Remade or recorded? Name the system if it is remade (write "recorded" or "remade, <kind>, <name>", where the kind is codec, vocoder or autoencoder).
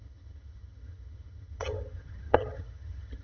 remade, vocoder, HiFi-GAN